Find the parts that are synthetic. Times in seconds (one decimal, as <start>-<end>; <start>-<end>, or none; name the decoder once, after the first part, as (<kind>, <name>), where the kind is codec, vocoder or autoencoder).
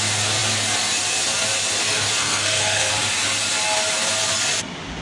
2.2-2.9 (codec, SNAC)